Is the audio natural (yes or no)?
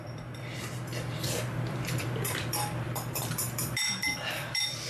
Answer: no